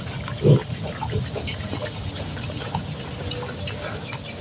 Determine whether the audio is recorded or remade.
recorded